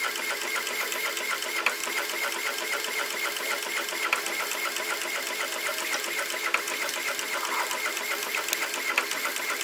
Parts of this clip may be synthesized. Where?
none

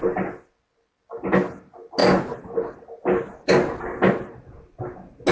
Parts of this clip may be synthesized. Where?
none

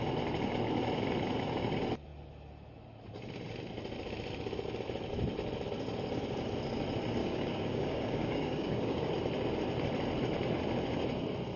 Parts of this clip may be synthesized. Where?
7.2-9.1 (codec, DAC)

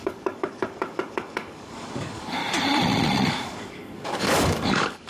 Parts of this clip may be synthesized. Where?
0.0-2.4 (codec, DAC); 3.3-5.1